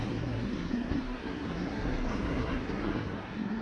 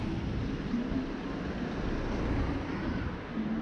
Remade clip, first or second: first